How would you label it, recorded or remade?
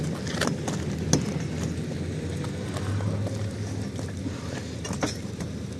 recorded